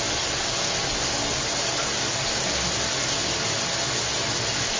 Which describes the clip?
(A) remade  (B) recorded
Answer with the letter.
B